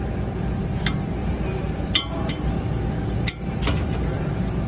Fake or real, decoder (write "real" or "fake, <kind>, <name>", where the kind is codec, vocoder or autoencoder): real